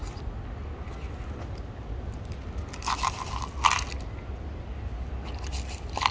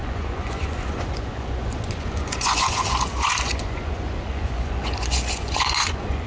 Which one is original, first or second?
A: first